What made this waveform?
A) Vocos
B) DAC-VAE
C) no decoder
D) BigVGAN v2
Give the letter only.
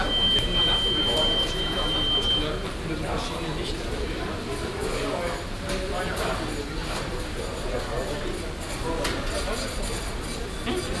C